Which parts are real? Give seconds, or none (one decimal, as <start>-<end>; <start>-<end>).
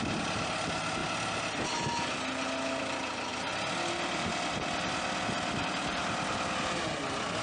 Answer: 0.0-7.4